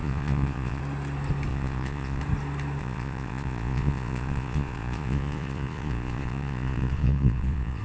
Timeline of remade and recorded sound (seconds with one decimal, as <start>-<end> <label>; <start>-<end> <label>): 0.0-0.8 remade; 0.8-1.5 recorded; 1.5-2.2 remade; 2.2-2.8 recorded; 2.8-7.8 remade